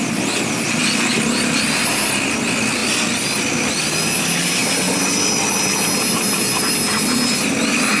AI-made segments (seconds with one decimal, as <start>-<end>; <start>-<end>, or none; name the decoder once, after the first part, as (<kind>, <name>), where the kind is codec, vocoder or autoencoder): none